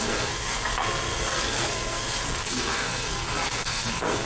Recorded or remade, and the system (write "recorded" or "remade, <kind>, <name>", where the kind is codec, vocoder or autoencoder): remade, codec, SNAC